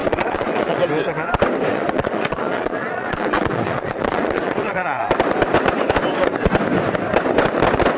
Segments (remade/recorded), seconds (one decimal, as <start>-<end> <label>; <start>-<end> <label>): 0.0-0.8 remade; 0.8-1.7 recorded; 1.7-5.0 remade; 5.0-8.0 recorded